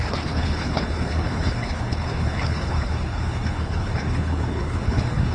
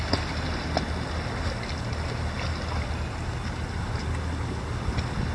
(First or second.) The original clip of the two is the second